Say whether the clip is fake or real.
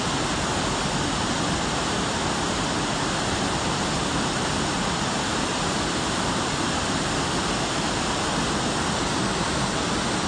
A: real